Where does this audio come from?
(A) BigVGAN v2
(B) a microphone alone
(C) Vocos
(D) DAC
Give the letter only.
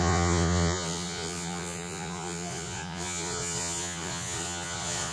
C